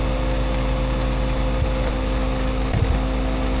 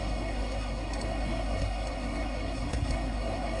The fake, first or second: second